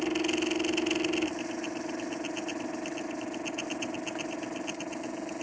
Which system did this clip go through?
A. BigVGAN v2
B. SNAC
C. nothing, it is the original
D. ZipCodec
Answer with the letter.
C